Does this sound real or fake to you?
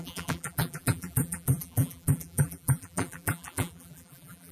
fake